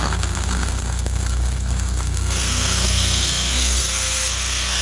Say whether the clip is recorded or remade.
remade